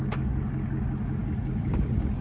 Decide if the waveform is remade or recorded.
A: recorded